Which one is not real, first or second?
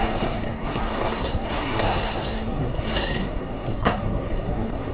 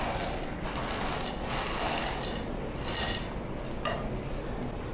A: first